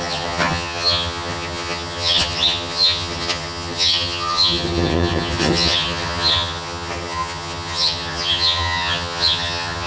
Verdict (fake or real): fake